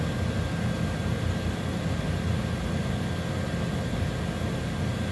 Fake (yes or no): no